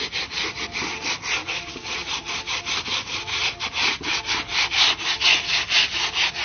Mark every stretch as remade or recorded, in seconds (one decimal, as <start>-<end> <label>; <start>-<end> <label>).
0.0-6.4 recorded